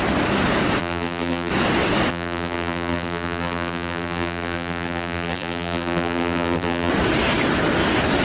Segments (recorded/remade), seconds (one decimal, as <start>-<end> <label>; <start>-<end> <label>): 0.0-0.8 recorded; 0.8-1.5 remade; 1.5-2.1 recorded; 2.1-6.9 remade; 6.9-8.2 recorded